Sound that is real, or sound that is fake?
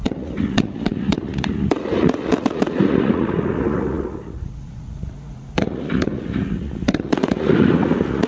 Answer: fake